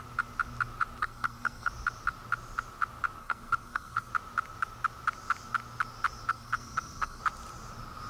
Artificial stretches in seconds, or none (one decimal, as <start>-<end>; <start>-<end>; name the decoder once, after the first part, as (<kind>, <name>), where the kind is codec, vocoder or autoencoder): 1.0-1.7 (codec, SNAC); 3.2-4.1; 6.3-7.2